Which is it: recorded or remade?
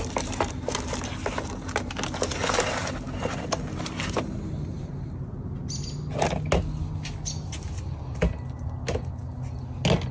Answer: recorded